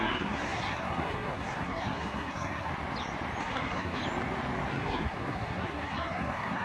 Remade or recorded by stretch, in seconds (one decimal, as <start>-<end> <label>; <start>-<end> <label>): 0.0-2.7 remade; 2.7-3.4 recorded; 3.4-4.0 remade; 4.0-4.7 recorded; 4.7-6.6 remade